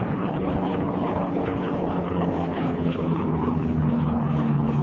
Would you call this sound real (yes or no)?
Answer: no